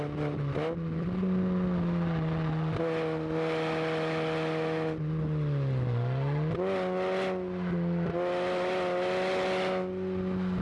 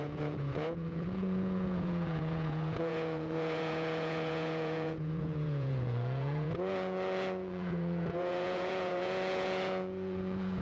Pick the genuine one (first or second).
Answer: first